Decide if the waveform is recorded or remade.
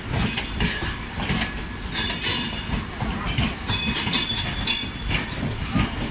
recorded